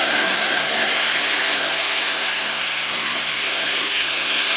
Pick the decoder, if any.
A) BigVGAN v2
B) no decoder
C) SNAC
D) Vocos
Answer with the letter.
C